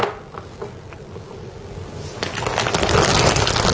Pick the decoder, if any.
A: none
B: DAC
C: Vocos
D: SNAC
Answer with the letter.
A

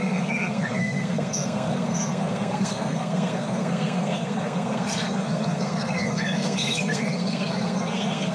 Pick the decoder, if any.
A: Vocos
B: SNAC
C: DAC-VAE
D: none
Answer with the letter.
B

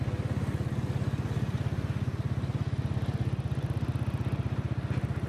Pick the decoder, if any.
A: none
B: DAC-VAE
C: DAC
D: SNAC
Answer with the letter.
A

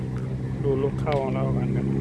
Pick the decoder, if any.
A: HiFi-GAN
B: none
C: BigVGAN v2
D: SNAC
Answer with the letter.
B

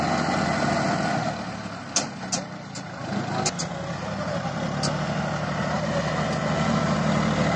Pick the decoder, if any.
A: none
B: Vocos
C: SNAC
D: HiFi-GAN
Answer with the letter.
A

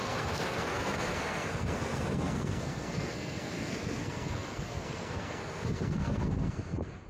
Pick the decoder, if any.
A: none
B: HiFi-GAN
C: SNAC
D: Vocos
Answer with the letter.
C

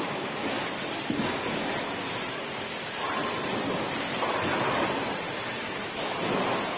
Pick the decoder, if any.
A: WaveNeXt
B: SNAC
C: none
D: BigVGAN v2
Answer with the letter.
C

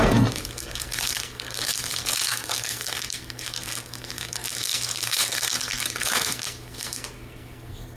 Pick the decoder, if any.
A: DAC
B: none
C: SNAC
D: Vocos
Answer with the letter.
C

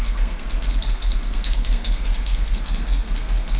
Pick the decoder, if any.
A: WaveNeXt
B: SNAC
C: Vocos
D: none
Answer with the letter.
B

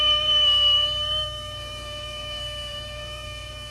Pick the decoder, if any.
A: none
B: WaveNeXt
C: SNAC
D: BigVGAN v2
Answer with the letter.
C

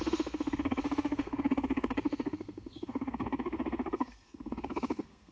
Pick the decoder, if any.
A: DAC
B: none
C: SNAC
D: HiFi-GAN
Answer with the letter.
C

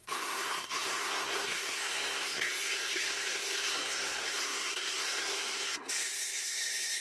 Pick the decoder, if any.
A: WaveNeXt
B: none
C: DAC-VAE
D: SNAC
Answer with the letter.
D